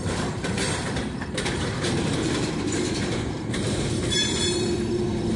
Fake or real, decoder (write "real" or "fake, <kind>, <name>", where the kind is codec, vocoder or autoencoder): fake, vocoder, BigVGAN v2